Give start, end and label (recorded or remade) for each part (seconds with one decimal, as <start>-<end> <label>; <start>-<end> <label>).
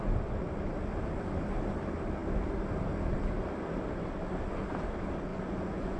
0.0-5.3 recorded; 5.3-6.0 remade